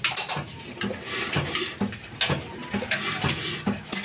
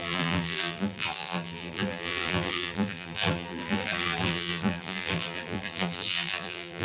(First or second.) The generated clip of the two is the second